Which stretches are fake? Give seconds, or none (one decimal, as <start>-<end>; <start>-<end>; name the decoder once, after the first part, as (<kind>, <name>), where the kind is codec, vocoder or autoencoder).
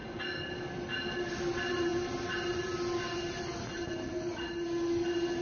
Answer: none